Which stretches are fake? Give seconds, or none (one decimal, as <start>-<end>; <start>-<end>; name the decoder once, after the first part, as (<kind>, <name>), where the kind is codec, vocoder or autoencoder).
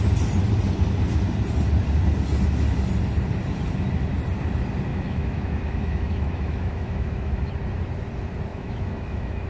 4.9-7.5 (autoencoder, DAC-VAE); 8.5-9.5